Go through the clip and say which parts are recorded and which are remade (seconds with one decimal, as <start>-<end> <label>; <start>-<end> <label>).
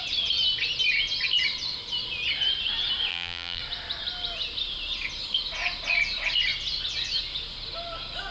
0.0-3.1 recorded; 3.1-3.6 remade; 3.6-8.3 recorded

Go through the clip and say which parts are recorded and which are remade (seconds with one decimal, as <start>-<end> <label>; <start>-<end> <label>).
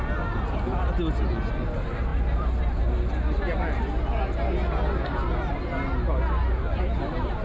0.0-7.4 recorded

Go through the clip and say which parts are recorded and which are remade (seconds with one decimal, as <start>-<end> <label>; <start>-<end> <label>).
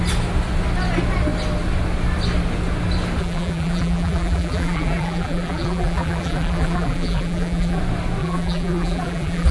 0.0-3.2 recorded; 3.2-7.8 remade; 7.8-8.2 recorded; 8.2-9.5 remade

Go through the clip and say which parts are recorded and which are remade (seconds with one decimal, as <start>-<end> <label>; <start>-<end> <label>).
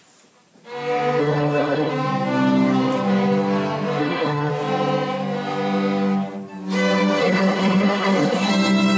0.0-1.2 recorded; 1.2-1.9 remade; 1.9-4.0 recorded; 4.0-4.5 remade; 4.5-7.2 recorded; 7.2-8.5 remade; 8.5-9.0 recorded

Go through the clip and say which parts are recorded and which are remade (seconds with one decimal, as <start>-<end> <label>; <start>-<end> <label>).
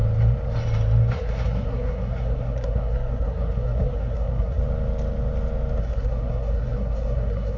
0.0-1.1 recorded; 1.1-4.6 remade; 4.6-5.8 recorded; 5.8-7.6 remade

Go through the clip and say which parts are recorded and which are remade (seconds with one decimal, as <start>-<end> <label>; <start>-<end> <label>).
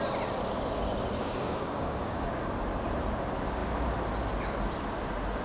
0.0-1.2 recorded; 1.2-2.4 remade; 2.4-5.4 recorded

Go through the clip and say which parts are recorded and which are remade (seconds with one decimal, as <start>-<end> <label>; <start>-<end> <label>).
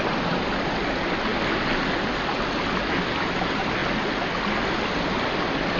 0.0-5.8 recorded